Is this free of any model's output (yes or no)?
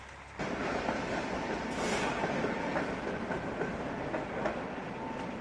yes